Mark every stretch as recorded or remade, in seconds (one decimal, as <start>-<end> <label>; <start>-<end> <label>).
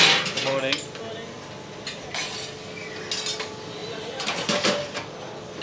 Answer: 0.0-3.8 recorded; 3.8-5.6 remade